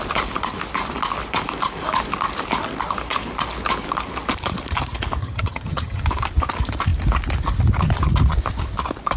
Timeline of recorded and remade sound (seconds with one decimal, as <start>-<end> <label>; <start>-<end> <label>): 0.0-5.2 recorded; 5.2-6.0 remade; 6.0-9.2 recorded